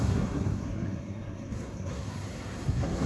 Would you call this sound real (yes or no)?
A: no